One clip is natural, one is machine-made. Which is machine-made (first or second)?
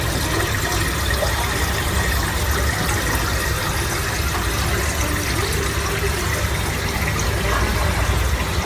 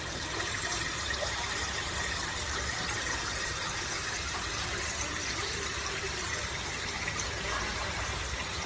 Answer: second